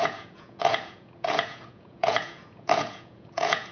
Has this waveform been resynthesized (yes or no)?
yes